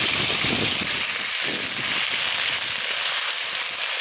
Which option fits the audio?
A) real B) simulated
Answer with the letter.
A